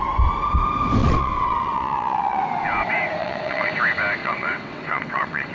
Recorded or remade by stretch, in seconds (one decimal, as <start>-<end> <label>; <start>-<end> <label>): 0.0-1.0 recorded; 1.0-2.4 remade; 2.4-3.2 recorded; 3.2-3.7 remade; 3.7-4.2 recorded; 4.2-5.5 remade